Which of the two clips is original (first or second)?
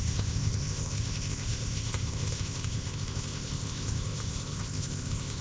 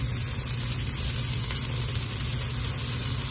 second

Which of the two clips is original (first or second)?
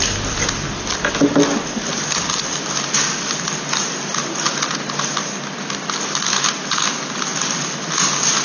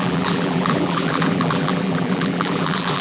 first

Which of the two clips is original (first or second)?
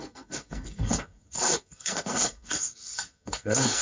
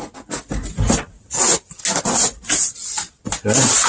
second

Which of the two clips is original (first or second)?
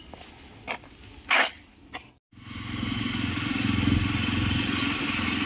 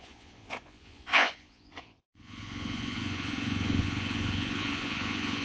first